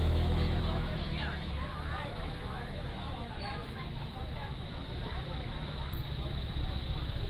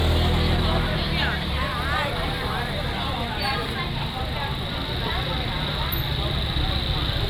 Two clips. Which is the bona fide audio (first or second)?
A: second